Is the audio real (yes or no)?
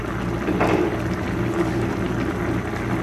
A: yes